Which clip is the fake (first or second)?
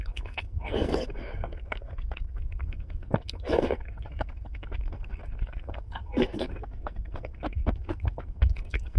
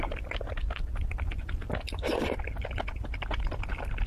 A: first